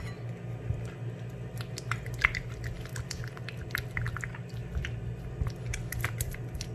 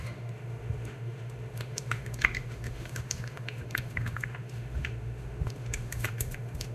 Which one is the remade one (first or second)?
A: second